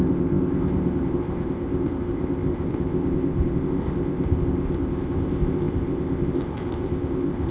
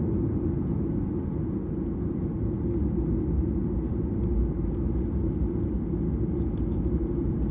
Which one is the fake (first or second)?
first